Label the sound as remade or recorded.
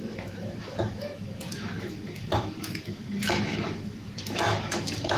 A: remade